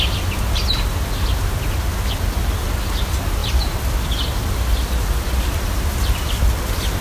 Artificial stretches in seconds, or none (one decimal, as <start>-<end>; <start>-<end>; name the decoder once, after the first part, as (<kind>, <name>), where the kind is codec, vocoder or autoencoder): none